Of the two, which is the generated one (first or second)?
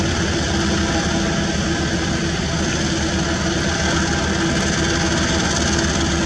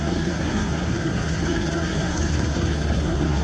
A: second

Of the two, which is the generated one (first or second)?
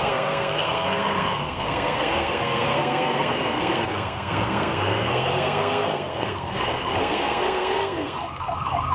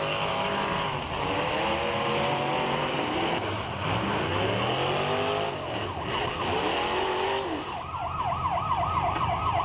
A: first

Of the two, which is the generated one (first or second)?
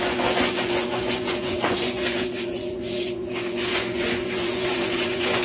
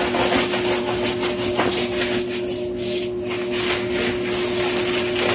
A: first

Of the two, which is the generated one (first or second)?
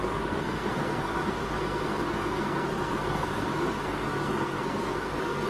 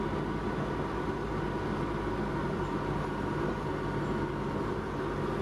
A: first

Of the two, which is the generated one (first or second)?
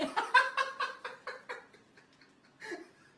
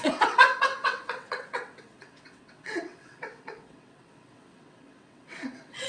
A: second